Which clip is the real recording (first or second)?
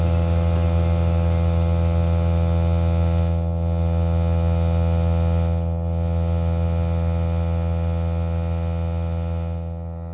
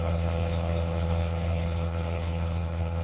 first